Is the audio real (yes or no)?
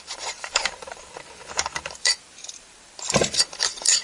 no